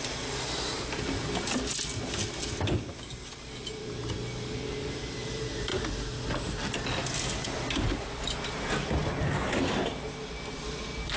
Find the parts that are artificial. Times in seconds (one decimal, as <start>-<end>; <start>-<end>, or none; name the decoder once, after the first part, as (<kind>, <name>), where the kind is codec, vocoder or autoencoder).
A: none